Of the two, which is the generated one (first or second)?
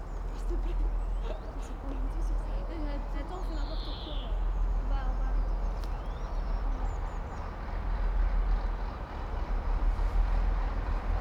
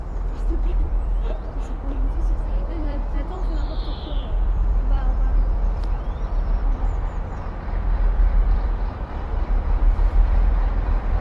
second